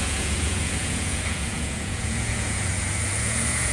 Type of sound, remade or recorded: remade